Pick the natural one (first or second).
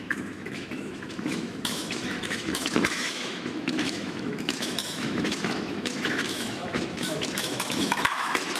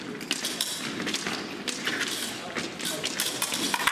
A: second